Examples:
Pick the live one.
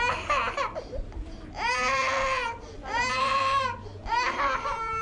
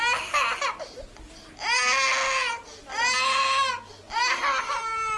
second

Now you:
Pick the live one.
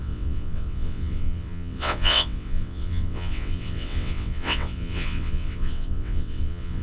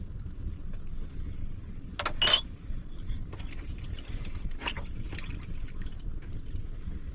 second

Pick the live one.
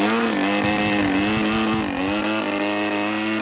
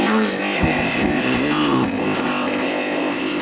first